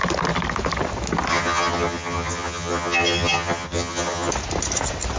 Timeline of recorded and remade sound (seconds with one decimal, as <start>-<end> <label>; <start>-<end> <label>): 0.0-1.3 recorded; 1.3-4.3 remade; 4.3-5.2 recorded